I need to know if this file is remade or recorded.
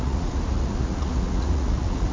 remade